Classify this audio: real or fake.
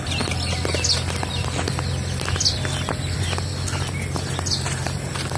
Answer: real